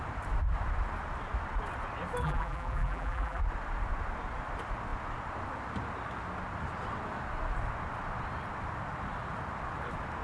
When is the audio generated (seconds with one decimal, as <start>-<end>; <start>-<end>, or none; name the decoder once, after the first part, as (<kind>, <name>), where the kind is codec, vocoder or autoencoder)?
2.2-3.4 (vocoder, BigVGAN v2)